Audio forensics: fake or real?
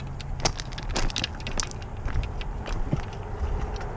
real